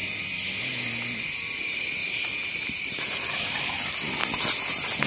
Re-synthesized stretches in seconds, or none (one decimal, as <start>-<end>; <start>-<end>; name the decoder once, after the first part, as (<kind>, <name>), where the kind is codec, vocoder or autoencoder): 1.6-2.0 (vocoder, BigVGAN v2); 2.7-4.2